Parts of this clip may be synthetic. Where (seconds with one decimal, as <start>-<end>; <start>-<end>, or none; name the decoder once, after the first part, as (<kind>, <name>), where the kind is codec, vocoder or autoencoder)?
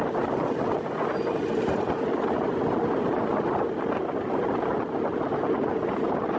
none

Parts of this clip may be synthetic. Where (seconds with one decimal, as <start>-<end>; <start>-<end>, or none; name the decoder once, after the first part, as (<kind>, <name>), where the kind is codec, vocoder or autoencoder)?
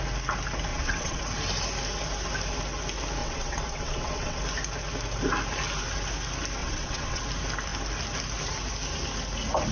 0.7-1.2 (vocoder, WaveNeXt); 3.2-4.4; 6.6-7.2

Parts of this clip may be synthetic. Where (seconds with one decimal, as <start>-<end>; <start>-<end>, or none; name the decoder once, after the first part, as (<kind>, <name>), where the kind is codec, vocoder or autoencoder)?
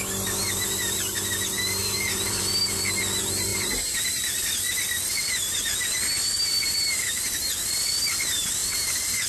1.8-2.4 (vocoder, BigVGAN v2); 3.5-4.2; 8.6-9.3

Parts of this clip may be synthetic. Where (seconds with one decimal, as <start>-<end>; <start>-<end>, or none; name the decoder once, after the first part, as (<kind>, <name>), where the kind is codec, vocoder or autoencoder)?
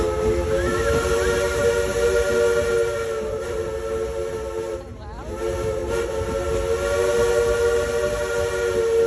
none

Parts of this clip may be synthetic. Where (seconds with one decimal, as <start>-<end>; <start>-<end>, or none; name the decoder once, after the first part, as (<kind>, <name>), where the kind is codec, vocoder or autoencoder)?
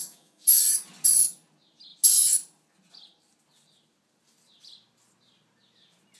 0.0-0.6 (autoencoder, DAC-VAE)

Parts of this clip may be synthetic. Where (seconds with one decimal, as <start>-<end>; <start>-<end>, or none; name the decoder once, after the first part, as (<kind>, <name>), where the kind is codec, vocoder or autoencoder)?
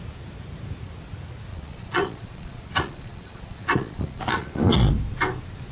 1.5-4.9 (vocoder, Vocos)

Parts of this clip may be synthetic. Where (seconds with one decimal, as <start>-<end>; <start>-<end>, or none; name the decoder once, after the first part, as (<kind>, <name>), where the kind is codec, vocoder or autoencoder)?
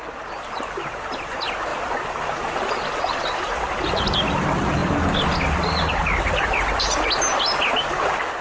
none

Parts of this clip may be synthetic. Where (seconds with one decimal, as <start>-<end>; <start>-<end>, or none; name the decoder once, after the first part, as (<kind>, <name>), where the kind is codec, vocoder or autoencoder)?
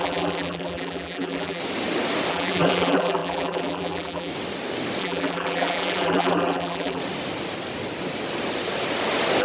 0.0-1.6 (vocoder, BigVGAN v2); 2.3-4.3; 5.0-7.0